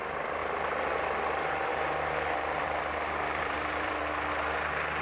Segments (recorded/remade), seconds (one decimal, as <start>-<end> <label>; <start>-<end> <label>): 0.0-0.4 recorded; 0.4-0.9 remade; 0.9-1.7 recorded; 1.7-4.3 remade; 4.3-5.0 recorded